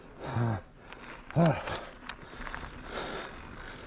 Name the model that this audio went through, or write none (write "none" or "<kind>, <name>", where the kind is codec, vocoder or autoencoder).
none